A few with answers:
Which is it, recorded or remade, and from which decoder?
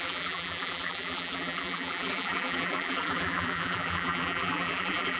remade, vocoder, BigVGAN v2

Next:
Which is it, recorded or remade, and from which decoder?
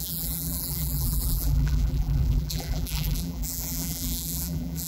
remade, vocoder, BigVGAN v2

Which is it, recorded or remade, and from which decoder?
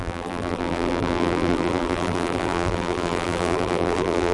remade, vocoder, BigVGAN v2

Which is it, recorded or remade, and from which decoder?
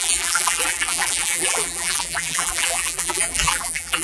remade, vocoder, BigVGAN v2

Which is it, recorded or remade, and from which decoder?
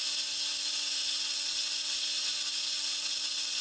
recorded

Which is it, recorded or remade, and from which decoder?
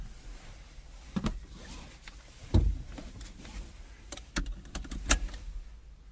recorded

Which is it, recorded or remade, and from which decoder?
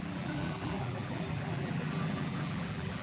remade, vocoder, BigVGAN v2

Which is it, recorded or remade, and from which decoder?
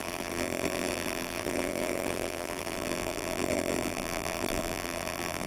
remade, vocoder, BigVGAN v2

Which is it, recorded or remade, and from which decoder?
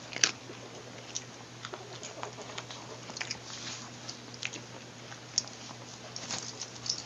recorded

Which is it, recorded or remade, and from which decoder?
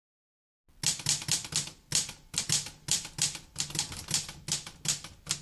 recorded